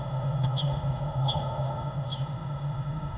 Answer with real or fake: fake